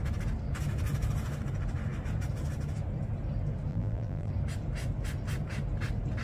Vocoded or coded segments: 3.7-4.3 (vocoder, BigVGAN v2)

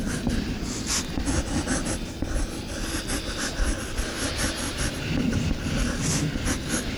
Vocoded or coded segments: 4.7-5.5 (vocoder, BigVGAN v2)

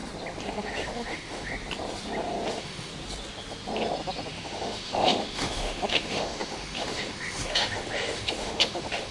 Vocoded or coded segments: 0.5-1.5 (autoencoder, DAC-VAE); 2.5-2.9; 4.3-9.1

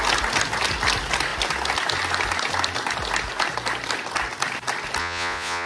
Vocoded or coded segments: 5.0-5.7 (vocoder, Vocos)

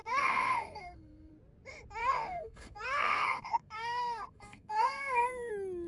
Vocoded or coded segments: 0.0-1.3 (codec, SNAC); 2.0-5.5